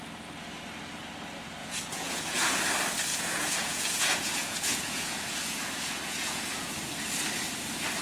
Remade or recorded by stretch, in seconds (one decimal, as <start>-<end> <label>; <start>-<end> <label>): 0.0-1.6 recorded; 1.6-2.6 remade; 2.6-3.1 recorded; 3.1-6.8 remade; 6.8-8.0 recorded